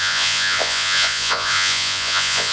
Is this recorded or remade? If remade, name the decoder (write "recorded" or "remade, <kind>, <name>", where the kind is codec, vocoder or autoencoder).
remade, vocoder, Vocos